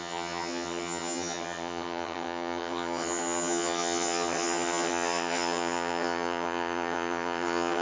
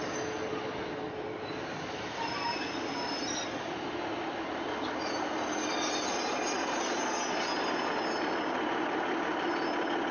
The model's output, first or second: first